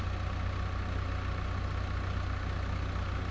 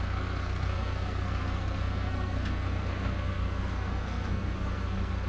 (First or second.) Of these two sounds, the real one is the first